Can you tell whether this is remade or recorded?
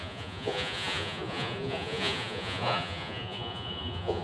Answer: remade